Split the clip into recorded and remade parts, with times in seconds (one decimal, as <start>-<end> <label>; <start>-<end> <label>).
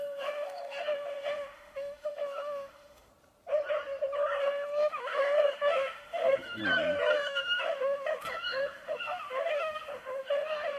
0.0-3.1 remade; 3.1-4.4 recorded; 4.4-6.6 remade; 6.6-7.1 recorded; 7.1-10.8 remade